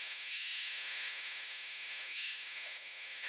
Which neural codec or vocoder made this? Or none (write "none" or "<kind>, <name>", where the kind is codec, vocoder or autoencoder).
autoencoder, DAC-VAE